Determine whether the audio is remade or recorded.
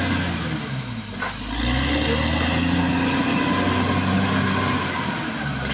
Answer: recorded